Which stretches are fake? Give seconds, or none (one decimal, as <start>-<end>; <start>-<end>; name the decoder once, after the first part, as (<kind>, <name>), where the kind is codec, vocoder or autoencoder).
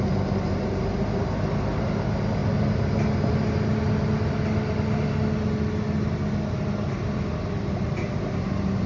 none